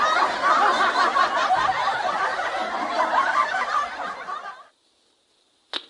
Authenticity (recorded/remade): recorded